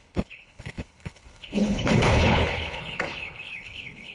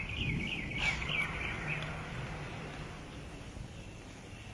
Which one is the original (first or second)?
second